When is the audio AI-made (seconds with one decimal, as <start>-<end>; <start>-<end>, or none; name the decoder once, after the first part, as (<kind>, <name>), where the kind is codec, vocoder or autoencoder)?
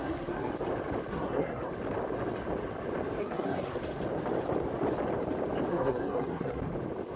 0.0-0.5 (codec, SNAC); 1.1-1.7; 3.2-3.8; 5.7-6.6